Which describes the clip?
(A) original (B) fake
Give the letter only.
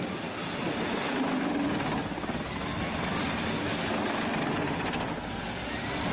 A